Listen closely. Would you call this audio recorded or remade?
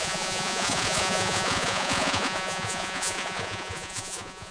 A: remade